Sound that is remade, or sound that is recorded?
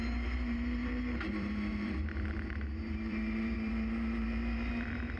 remade